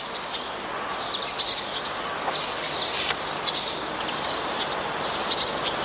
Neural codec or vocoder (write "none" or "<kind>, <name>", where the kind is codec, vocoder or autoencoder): none